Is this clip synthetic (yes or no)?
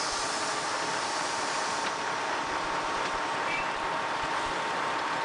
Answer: yes